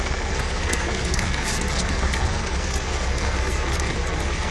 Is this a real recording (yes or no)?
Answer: no